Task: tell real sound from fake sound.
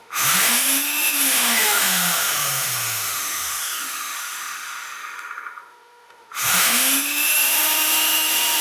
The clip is fake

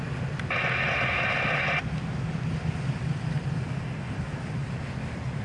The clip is real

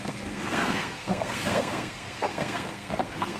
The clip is fake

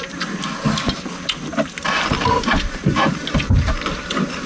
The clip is real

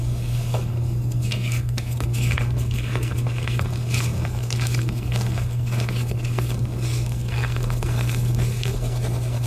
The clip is fake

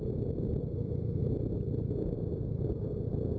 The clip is real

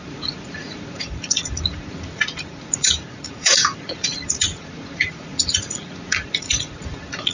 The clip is fake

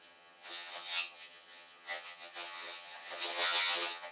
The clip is fake